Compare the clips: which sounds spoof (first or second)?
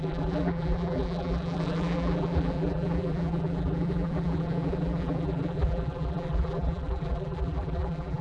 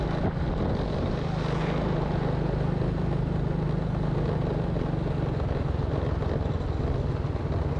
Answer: first